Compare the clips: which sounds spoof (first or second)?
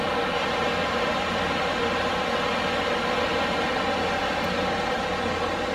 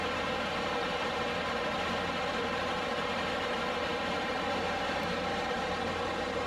second